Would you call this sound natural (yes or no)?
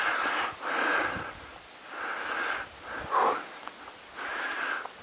yes